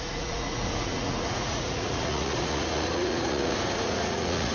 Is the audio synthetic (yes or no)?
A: yes